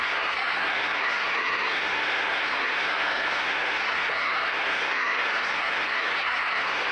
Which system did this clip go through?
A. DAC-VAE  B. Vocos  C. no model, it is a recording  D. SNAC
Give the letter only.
D